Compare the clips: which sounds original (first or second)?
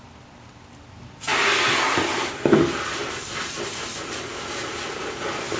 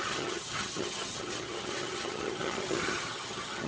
first